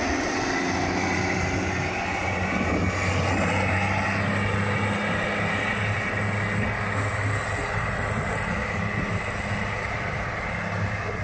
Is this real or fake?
real